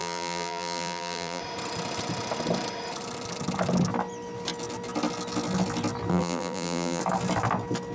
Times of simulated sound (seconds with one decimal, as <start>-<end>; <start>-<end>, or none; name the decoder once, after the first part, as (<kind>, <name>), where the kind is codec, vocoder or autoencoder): 0.0-1.4 (vocoder, BigVGAN v2); 6.1-7.0